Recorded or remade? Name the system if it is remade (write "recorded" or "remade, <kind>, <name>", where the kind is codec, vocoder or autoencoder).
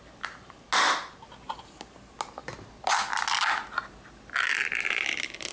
recorded